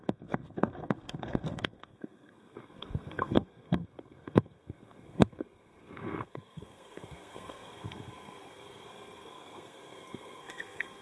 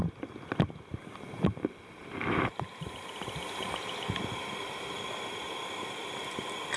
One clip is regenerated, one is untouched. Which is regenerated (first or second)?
first